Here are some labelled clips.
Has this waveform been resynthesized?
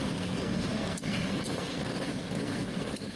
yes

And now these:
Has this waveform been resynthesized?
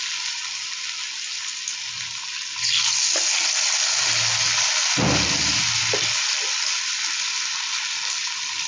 no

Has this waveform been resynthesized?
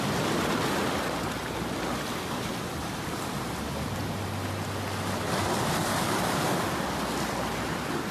no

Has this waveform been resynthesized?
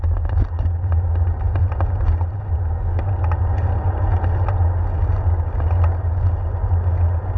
no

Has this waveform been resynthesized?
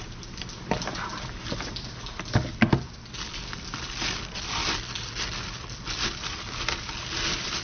no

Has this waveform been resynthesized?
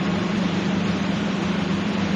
yes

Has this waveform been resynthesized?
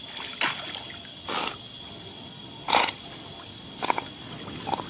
no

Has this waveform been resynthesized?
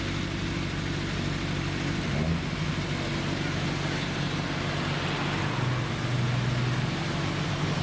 no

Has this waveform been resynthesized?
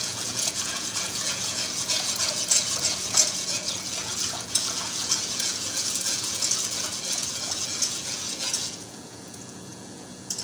yes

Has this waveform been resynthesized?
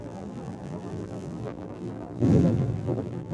yes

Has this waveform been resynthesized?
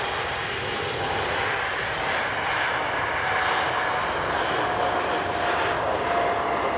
no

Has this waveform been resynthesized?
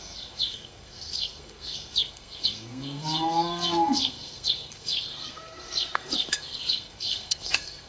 yes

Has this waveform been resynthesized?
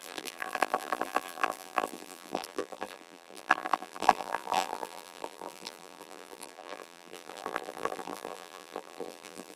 yes